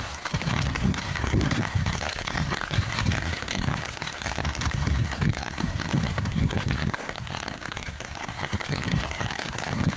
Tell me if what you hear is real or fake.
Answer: fake